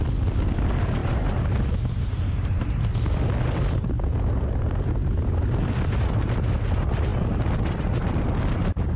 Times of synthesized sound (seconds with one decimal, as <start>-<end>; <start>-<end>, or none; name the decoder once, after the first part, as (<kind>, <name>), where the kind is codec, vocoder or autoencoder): none